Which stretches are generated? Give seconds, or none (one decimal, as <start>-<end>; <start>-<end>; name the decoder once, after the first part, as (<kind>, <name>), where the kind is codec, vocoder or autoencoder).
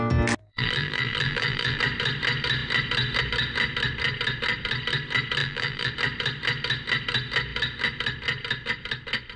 0.4-1.8 (vocoder, BigVGAN v2); 5.4-5.9